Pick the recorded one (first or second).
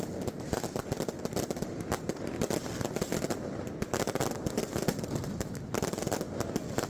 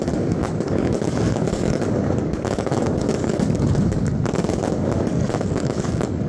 first